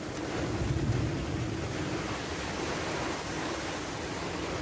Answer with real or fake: real